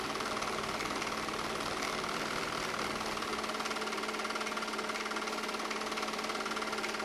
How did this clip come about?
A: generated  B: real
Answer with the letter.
B